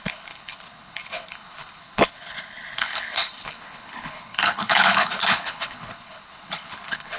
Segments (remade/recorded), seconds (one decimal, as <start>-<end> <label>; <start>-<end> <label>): 0.0-7.2 remade